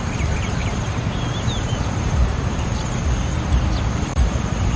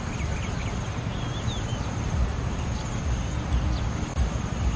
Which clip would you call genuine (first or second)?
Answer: second